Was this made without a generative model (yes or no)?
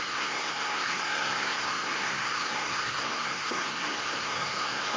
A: no